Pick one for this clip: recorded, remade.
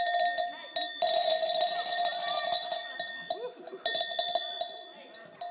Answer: recorded